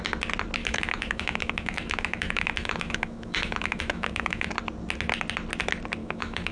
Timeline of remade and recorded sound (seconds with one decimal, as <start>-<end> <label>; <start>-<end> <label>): 0.0-0.6 recorded; 0.6-4.5 remade; 4.5-6.0 recorded; 6.0-6.5 remade